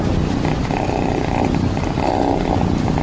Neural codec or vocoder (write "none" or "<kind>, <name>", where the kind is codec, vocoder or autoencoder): none